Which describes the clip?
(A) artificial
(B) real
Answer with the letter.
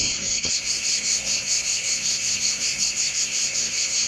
A